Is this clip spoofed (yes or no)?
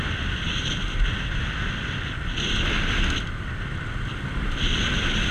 no